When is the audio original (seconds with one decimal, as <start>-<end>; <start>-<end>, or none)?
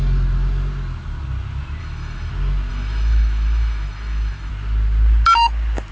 0.0-1.8; 2.3-2.7; 4.5-5.9